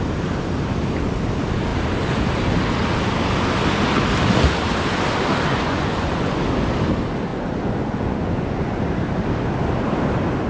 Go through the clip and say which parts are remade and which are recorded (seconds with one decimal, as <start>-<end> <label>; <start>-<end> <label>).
0.0-5.5 recorded; 5.5-6.4 remade; 6.4-7.3 recorded; 7.3-8.8 remade; 8.8-10.5 recorded